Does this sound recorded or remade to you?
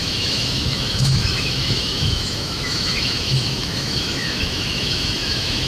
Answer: remade